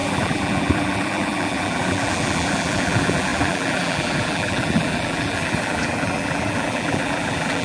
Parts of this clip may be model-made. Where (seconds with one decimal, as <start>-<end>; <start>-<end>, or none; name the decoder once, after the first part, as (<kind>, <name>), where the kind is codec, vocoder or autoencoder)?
0.0-7.6 (vocoder, BigVGAN v2)